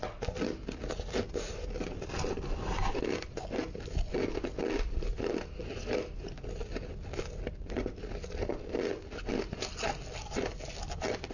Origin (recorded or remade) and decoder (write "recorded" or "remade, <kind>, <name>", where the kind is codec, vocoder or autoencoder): recorded